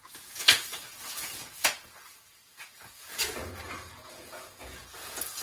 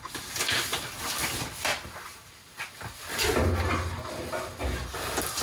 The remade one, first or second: first